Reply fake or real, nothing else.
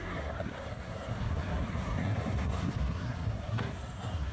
fake